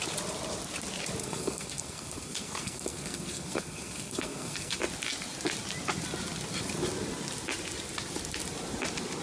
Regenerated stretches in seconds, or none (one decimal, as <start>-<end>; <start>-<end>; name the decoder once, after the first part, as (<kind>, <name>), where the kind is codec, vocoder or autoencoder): 1.2-4.8 (codec, SNAC)